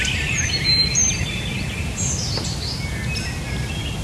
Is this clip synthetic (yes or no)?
no